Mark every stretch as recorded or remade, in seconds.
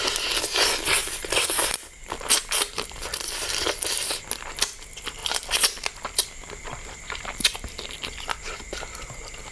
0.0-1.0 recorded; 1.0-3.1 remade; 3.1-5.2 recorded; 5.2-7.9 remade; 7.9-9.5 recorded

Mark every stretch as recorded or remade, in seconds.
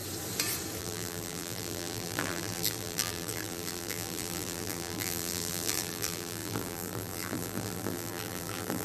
0.0-0.8 recorded; 0.8-8.8 remade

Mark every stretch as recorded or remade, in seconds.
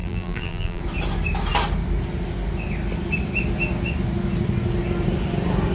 0.0-0.8 remade; 0.8-5.7 recorded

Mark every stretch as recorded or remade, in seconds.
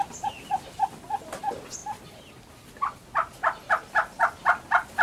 0.0-5.0 recorded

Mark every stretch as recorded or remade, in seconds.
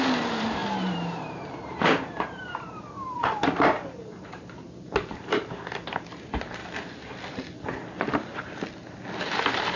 0.0-6.6 remade; 6.6-9.2 recorded; 9.2-9.8 remade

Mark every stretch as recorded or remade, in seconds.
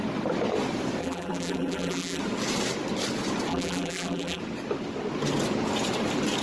0.0-1.0 recorded; 1.0-2.2 remade; 2.2-3.5 recorded; 3.5-4.4 remade; 4.4-6.4 recorded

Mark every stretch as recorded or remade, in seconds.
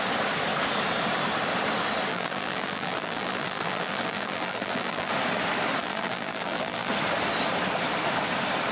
0.0-2.1 recorded; 2.1-5.1 remade; 5.1-5.8 recorded; 5.8-6.9 remade; 6.9-8.7 recorded